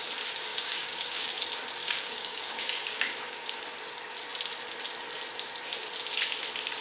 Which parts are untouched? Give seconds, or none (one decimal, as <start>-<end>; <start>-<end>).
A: 0.0-0.5; 1.4-1.8; 3.6-6.8